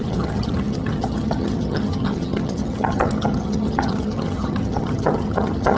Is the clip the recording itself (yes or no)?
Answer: no